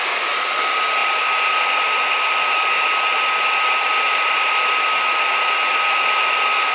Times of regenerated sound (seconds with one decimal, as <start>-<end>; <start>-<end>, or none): none